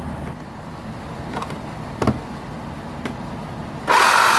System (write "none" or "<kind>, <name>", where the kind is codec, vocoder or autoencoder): none